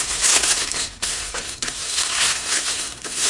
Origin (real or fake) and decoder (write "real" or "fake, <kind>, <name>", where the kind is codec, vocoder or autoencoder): fake, codec, SNAC